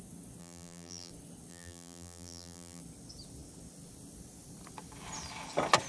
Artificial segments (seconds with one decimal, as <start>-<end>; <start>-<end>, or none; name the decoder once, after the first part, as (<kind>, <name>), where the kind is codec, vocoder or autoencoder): 0.4-1.1 (vocoder, BigVGAN v2); 1.5-2.8